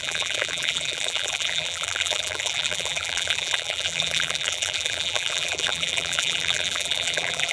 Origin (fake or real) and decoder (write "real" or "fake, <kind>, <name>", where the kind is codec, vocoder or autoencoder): fake, vocoder, BigVGAN v2